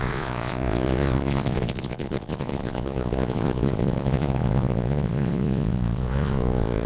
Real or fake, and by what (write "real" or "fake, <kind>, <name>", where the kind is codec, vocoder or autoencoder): fake, vocoder, Vocos